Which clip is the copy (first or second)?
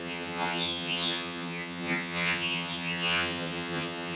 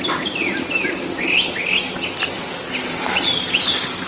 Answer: first